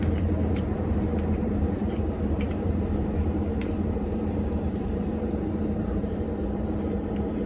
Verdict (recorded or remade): remade